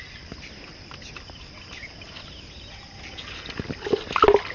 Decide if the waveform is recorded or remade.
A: recorded